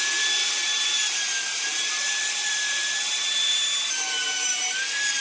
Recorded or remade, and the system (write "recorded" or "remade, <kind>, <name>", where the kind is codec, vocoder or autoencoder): remade, vocoder, BigVGAN v2